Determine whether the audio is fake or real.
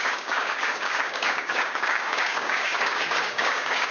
fake